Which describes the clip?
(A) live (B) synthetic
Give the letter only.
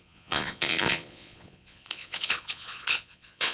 B